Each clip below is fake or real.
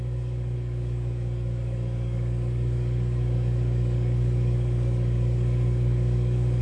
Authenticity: fake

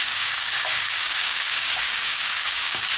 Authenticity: fake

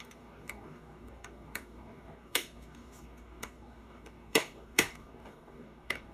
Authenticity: fake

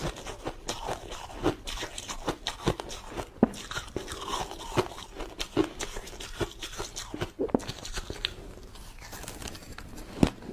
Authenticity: real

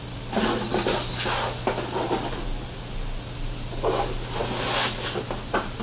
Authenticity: real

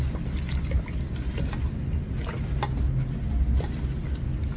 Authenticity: real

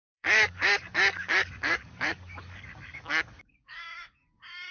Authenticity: fake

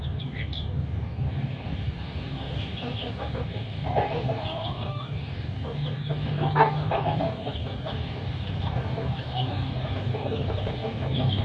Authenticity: fake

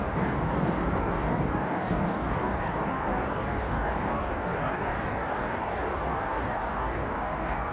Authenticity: fake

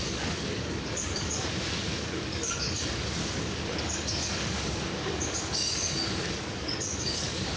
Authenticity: fake